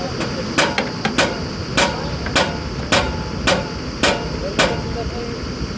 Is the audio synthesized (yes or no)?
no